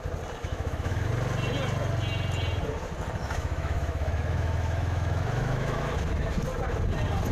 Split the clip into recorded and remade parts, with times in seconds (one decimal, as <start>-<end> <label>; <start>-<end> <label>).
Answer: 0.0-0.4 recorded; 0.4-1.1 remade; 1.1-3.2 recorded; 3.2-5.9 remade; 5.9-7.3 recorded

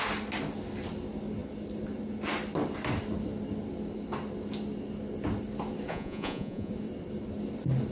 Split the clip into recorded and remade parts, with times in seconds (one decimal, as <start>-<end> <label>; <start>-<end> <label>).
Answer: 0.0-5.9 recorded; 5.9-6.7 remade; 6.7-7.9 recorded